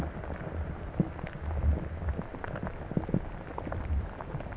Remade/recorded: recorded